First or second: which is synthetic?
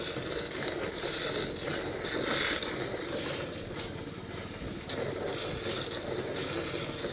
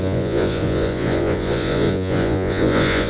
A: second